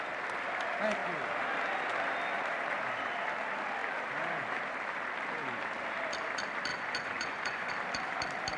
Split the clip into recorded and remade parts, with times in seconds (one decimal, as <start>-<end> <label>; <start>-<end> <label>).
0.0-6.7 recorded; 6.7-7.7 remade; 7.7-8.6 recorded